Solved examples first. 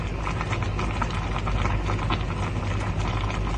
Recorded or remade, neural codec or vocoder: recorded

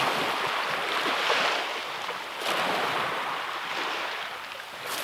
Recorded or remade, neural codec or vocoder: recorded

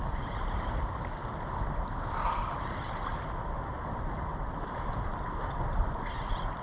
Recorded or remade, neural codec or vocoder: recorded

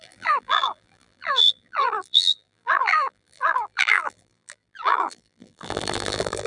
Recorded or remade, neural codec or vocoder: remade, vocoder, BigVGAN v2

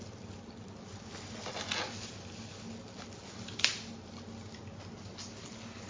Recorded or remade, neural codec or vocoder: recorded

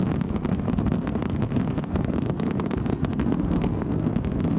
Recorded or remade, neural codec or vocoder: remade, codec, SNAC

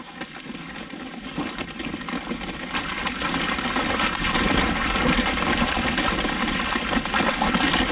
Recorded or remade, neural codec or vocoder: recorded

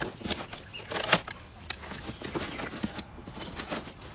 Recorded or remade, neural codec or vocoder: recorded